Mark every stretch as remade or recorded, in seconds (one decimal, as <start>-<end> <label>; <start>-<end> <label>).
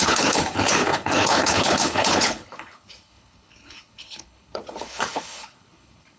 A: 0.0-6.2 remade